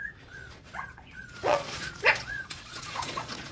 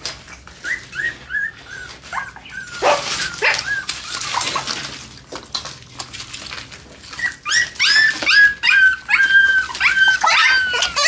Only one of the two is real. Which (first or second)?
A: second